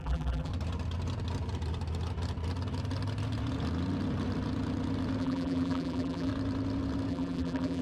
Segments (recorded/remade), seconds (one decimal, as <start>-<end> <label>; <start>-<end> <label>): 0.0-0.5 remade; 0.5-5.2 recorded; 5.2-6.3 remade; 6.3-7.1 recorded; 7.1-7.8 remade